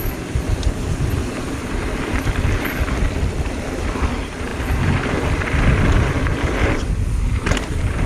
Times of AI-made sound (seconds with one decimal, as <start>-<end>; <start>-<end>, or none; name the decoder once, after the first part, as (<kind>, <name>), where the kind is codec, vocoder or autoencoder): 0.0-8.1 (vocoder, BigVGAN v2)